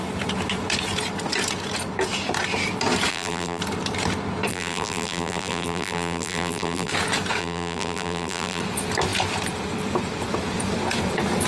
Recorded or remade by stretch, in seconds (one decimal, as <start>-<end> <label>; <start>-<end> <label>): 0.0-3.1 recorded; 3.1-3.6 remade; 3.6-4.5 recorded; 4.5-6.9 remade; 6.9-7.4 recorded; 7.4-8.6 remade; 8.6-11.5 recorded